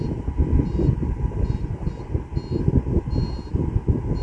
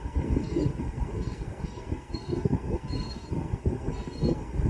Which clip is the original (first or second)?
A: first